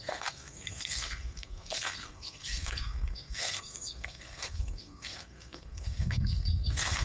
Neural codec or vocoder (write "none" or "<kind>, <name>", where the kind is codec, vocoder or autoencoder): codec, SNAC